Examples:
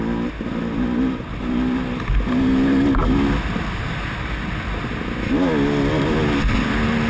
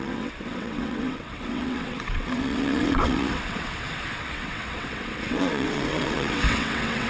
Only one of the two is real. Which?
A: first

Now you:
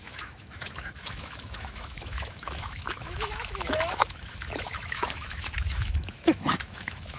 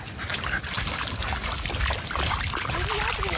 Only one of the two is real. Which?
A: second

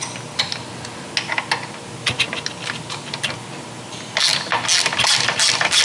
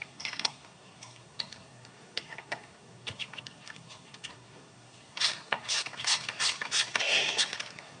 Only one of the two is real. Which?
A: first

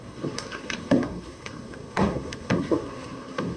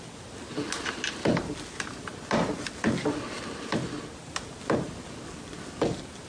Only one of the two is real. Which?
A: second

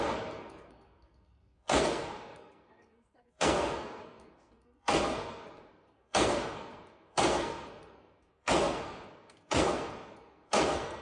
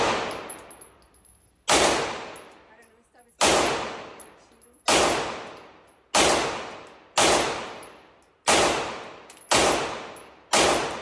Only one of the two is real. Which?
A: second